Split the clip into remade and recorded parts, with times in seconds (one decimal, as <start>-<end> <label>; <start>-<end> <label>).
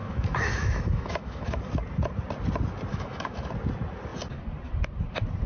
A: 0.0-1.6 remade; 1.6-2.9 recorded; 2.9-3.5 remade; 3.5-5.5 recorded